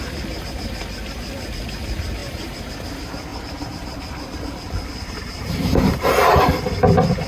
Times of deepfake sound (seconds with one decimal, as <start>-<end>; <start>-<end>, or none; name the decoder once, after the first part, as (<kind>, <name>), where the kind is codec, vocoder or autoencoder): 2.2-2.7 (vocoder, BigVGAN v2); 3.3-6.4